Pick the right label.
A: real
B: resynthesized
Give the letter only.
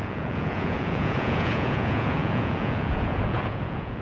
B